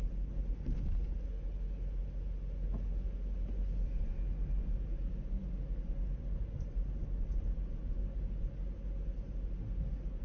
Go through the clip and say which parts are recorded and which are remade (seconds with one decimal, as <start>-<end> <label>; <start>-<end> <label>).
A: 0.0-10.2 recorded